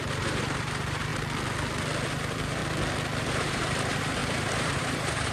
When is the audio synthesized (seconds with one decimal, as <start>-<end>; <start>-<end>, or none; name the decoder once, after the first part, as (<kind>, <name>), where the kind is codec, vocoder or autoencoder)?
0.0-1.1 (vocoder, BigVGAN v2); 2.1-2.6; 3.2-5.3